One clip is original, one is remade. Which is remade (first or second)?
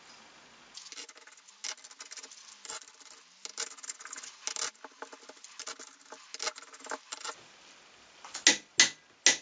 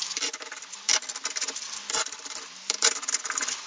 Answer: second